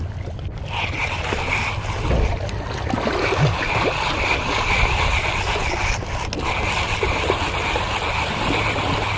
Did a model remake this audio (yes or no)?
no